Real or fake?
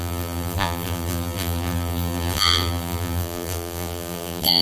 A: fake